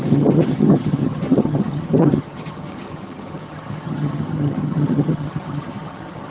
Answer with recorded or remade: remade